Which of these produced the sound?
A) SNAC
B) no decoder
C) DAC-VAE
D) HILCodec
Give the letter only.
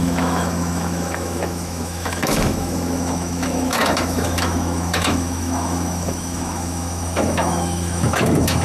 C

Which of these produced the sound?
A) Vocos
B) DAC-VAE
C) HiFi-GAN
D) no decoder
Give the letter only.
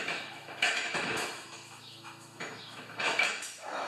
B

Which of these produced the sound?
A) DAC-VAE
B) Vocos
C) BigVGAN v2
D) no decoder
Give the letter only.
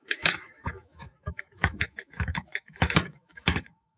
A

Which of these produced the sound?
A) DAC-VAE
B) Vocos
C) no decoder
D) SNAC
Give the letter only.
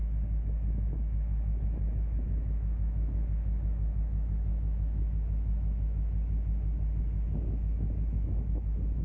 A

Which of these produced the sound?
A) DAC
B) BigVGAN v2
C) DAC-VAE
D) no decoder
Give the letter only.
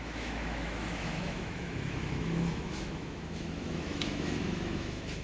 C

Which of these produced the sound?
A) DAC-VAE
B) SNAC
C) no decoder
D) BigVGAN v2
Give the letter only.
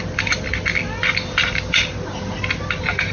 C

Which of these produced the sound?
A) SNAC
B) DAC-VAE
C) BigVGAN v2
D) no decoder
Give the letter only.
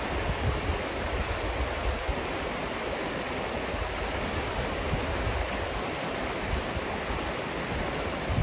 D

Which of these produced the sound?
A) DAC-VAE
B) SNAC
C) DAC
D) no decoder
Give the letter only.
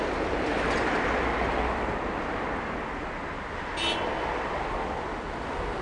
D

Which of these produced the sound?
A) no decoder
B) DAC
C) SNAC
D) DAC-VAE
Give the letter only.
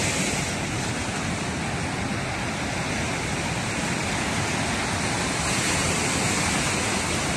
A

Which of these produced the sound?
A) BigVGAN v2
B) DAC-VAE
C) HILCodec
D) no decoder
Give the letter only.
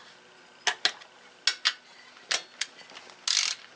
D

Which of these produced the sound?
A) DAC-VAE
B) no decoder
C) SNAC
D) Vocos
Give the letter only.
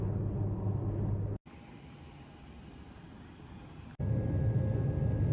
B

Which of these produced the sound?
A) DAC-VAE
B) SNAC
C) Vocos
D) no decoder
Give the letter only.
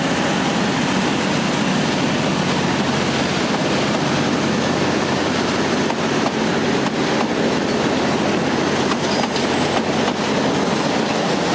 D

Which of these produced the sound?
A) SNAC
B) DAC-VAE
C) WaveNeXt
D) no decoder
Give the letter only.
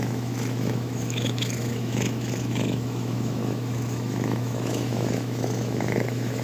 B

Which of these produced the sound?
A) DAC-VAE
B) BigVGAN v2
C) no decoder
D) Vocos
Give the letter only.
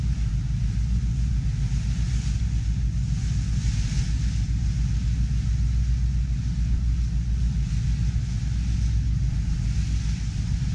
C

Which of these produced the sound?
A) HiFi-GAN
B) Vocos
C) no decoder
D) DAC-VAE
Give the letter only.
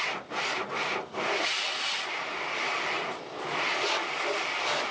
C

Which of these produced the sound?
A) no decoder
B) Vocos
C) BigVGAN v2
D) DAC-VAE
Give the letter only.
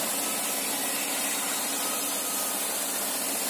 A